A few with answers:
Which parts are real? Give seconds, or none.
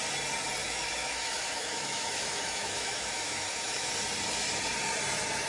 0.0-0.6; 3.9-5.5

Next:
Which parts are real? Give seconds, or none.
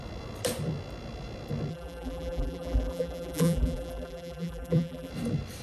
0.0-1.7; 5.1-5.6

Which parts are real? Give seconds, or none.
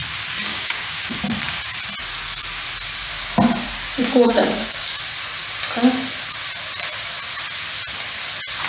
0.0-0.5; 1.2-4.0; 4.9-8.7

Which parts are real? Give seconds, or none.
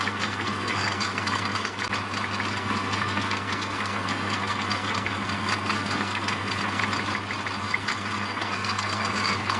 1.8-2.5; 6.8-7.6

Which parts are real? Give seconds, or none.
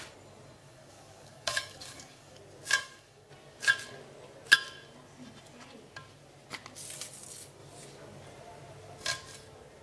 0.0-0.6; 2.4-2.8; 3.3-9.8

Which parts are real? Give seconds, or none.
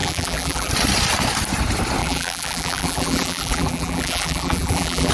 0.7-2.0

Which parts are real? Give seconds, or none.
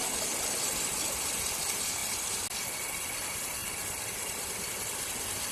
0.0-5.5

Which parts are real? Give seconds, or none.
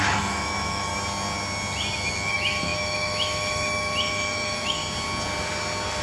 0.9-2.3; 4.8-6.0